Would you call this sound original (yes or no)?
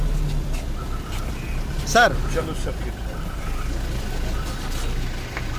yes